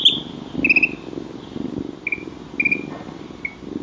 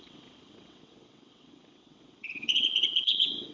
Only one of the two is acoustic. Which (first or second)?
first